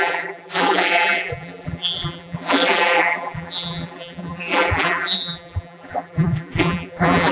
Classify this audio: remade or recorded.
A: remade